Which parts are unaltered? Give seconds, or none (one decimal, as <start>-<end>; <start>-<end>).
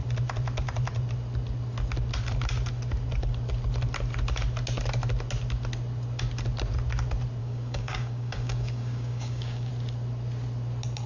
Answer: 0.0-7.4; 9.7-11.1